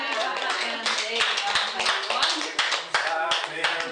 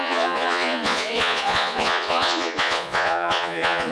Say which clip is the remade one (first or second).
second